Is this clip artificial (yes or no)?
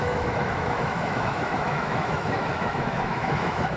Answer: yes